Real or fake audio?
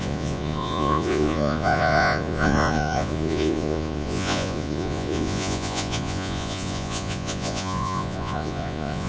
fake